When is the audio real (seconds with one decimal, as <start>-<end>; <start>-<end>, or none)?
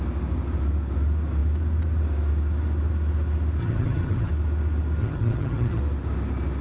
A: 0.0-3.6; 4.3-5.0; 5.8-6.6